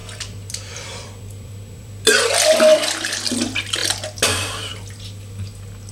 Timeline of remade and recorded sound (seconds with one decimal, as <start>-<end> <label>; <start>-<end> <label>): 0.0-1.9 remade; 1.9-5.9 recorded